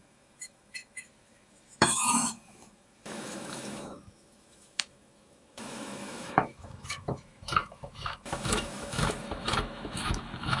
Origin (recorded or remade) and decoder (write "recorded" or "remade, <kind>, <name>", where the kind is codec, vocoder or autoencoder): remade, autoencoder, DAC-VAE